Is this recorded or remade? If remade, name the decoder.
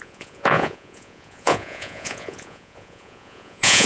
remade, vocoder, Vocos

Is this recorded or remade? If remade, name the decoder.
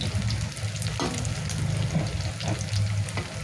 recorded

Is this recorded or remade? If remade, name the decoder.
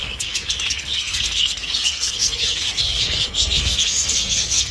remade, codec, SNAC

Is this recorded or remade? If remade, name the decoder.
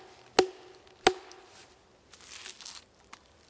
recorded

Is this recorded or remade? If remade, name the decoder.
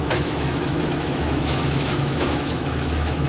remade, autoencoder, DAC-VAE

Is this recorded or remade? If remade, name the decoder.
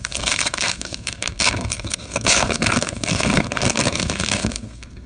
remade, codec, SNAC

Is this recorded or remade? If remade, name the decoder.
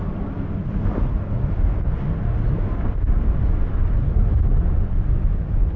recorded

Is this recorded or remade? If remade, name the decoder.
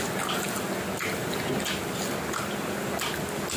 recorded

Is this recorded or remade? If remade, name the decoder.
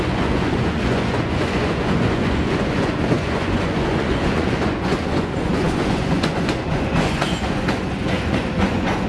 remade, vocoder, Vocos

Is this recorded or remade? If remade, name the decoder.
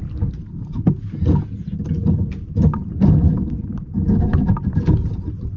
recorded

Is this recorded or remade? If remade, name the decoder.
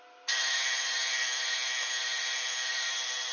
recorded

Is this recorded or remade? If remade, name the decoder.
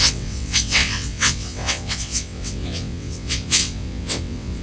remade, vocoder, WaveNeXt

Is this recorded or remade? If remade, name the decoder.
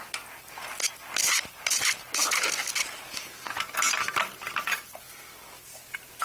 recorded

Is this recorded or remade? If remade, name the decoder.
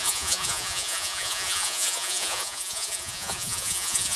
remade, vocoder, Vocos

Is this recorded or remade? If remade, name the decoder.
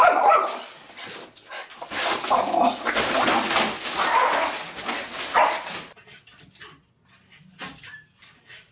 recorded